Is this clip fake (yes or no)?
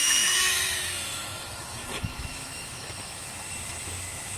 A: yes